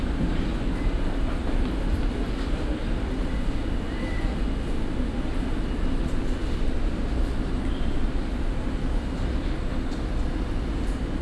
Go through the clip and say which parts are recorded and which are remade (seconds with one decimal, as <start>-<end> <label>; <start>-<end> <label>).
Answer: 0.0-11.2 recorded